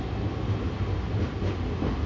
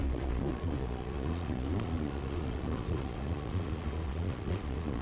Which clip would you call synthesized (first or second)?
second